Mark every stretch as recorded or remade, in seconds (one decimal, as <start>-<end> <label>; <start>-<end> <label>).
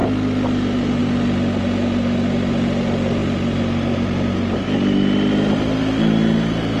0.0-6.8 recorded